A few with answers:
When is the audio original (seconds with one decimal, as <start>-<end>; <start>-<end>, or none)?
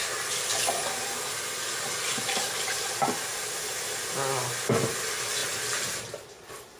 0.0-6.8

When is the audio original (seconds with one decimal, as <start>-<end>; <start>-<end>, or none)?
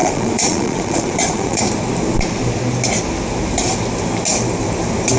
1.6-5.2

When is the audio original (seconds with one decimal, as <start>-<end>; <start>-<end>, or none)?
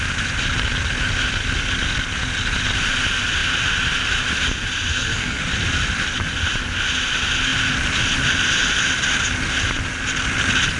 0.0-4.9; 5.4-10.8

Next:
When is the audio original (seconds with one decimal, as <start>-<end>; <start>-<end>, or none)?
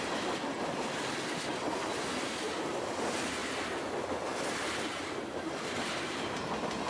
0.0-6.9